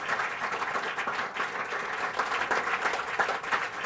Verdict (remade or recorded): recorded